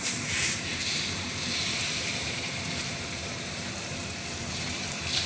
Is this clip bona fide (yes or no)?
no